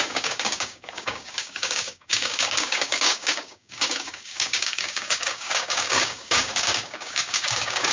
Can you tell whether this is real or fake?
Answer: fake